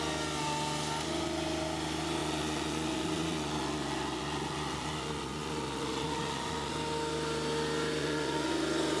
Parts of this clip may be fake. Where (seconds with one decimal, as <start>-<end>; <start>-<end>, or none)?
2.2-6.7; 8.0-8.5